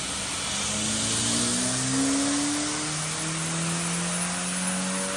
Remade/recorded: recorded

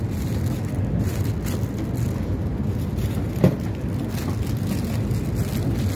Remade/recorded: recorded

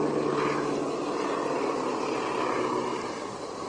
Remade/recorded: recorded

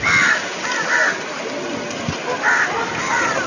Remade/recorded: recorded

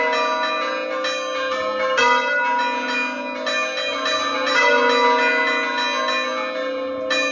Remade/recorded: recorded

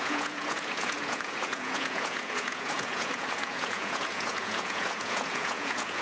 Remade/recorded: remade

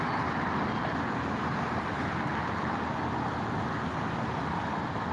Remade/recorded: recorded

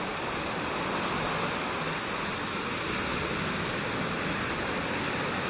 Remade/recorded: recorded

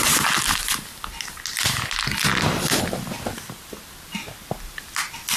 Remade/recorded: recorded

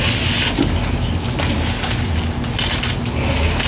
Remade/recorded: recorded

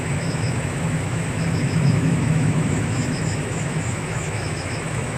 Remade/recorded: remade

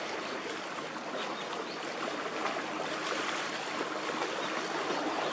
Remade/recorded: recorded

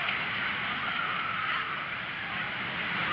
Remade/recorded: recorded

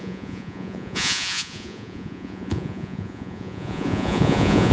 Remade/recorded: remade